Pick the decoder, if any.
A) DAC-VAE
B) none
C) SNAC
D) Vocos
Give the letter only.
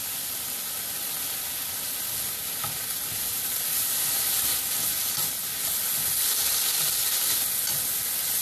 B